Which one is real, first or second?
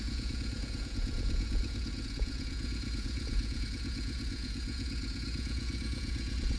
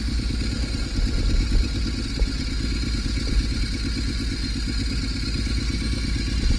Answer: second